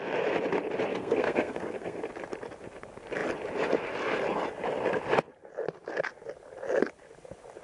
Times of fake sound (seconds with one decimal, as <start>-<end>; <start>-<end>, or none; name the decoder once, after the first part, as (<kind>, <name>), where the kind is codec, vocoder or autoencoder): 0.9-2.1 (codec, SNAC)

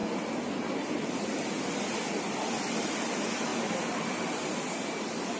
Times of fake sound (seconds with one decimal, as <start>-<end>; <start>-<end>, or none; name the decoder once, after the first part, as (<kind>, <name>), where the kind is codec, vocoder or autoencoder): 0.0-5.4 (vocoder, BigVGAN v2)

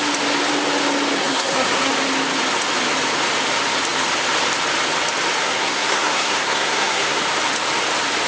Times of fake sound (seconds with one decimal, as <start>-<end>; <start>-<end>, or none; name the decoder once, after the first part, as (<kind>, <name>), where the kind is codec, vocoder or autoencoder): 1.2-1.9 (codec, SNAC); 5.4-7.2

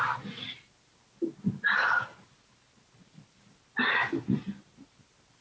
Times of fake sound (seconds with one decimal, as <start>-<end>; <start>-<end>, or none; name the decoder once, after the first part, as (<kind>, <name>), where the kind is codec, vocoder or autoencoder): none

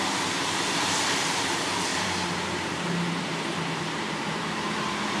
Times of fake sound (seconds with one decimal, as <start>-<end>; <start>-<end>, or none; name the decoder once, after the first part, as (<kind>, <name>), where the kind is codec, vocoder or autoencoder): 1.9-4.7 (vocoder, BigVGAN v2)